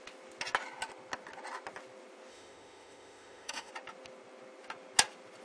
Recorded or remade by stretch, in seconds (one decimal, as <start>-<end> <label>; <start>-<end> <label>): 0.0-2.3 recorded; 2.3-3.7 remade; 3.7-5.4 recorded